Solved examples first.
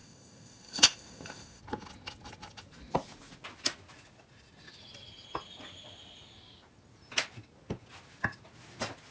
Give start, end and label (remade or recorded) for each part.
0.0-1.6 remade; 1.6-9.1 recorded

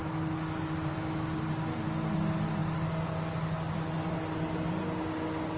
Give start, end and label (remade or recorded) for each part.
0.0-5.6 recorded

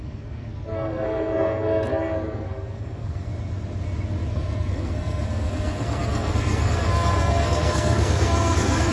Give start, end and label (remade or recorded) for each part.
0.0-3.3 remade; 3.3-4.3 recorded; 4.3-8.9 remade

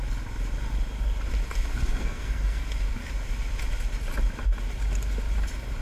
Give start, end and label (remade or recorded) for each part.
0.0-1.7 recorded; 1.7-2.6 remade; 2.6-5.8 recorded

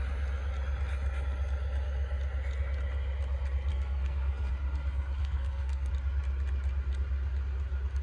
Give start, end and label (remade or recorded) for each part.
0.0-3.7 recorded; 3.7-4.5 remade; 4.5-5.2 recorded; 5.2-5.9 remade; 5.9-8.0 recorded